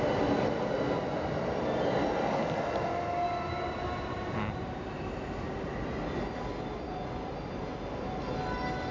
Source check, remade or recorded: recorded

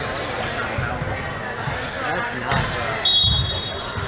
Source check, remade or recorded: recorded